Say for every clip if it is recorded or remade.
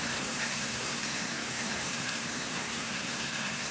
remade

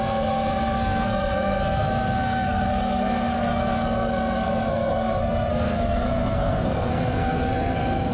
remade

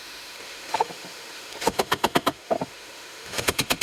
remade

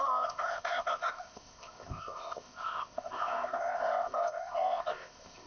remade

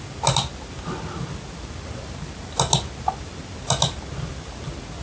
recorded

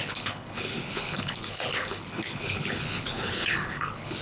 remade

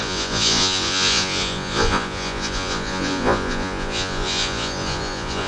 remade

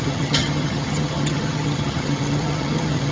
remade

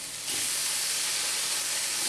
recorded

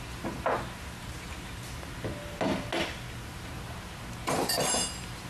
recorded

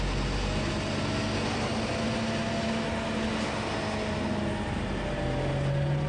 recorded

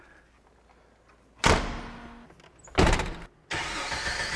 recorded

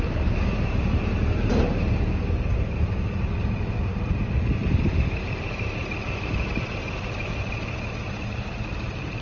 remade